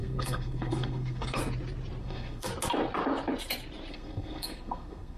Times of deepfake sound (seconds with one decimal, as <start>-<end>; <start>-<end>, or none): 0.0-1.4; 2.0-2.5; 3.9-5.2